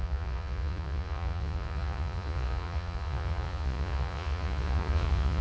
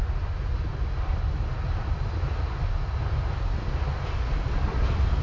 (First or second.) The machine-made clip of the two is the first